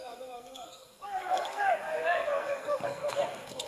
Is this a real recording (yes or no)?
no